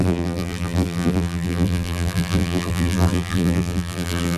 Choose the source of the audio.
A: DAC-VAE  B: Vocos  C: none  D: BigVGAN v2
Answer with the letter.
D